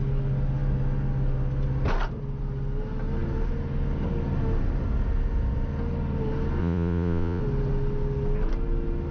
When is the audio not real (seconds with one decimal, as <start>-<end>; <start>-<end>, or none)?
6.6-7.4